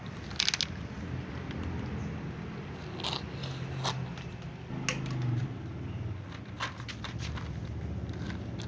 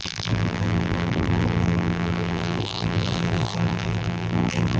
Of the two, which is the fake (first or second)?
second